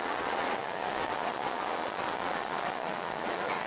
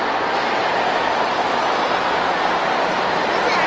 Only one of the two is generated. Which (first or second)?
first